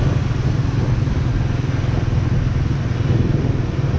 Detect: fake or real real